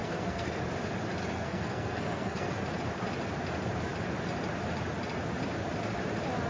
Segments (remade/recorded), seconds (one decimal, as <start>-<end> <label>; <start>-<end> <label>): 0.0-0.6 remade; 0.6-1.2 recorded; 1.2-2.6 remade; 2.6-6.5 recorded